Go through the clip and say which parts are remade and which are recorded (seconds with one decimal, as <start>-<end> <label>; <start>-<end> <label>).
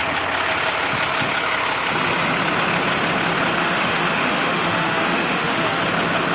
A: 0.0-3.6 recorded; 3.6-5.8 remade; 5.8-6.3 recorded